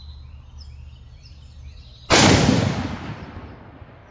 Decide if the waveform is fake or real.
real